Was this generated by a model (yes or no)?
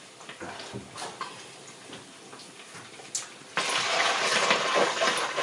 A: no